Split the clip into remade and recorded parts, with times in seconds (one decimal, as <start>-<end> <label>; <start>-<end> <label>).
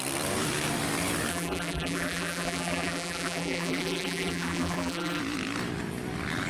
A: 0.0-1.3 recorded; 1.3-5.2 remade; 5.2-6.5 recorded